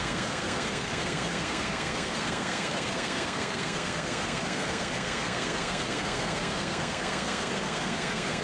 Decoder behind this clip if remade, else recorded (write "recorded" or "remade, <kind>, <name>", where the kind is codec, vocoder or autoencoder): remade, codec, SNAC